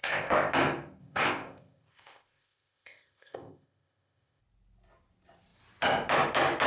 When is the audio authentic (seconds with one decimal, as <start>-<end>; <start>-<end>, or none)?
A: 0.5-1.0; 4.4-6.7